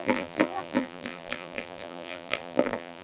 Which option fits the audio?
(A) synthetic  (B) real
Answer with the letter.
A